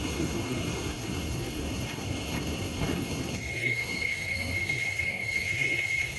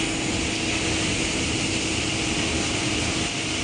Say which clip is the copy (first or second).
first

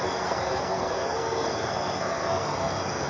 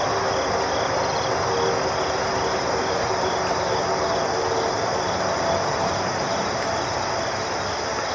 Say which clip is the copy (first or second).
first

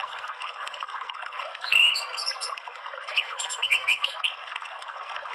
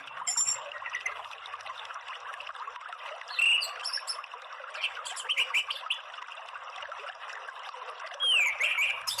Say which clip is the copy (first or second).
first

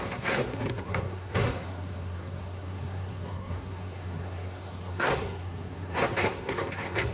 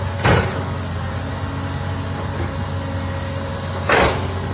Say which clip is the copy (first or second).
first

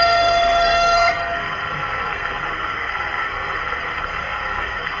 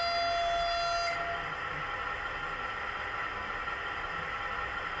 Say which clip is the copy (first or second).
first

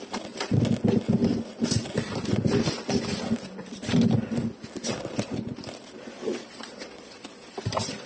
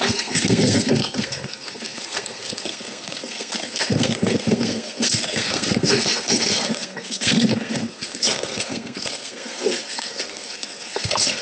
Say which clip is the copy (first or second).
second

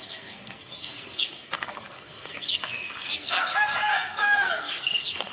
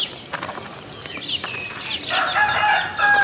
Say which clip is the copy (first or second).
first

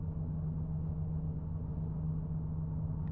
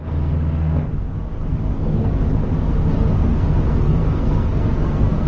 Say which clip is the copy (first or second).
second